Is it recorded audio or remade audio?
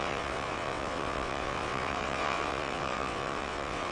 remade